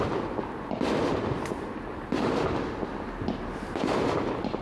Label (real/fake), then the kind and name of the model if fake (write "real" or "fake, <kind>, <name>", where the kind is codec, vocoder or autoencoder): real